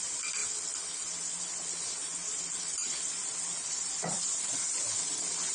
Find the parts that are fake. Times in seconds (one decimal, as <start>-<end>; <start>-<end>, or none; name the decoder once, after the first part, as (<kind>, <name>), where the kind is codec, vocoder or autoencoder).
2.0-5.5 (vocoder, BigVGAN v2)